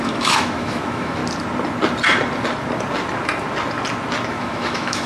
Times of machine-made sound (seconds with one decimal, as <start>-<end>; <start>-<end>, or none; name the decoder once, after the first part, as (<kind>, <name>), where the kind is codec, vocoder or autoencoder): 0.0-1.2 (autoencoder, DAC-VAE); 4.3-5.1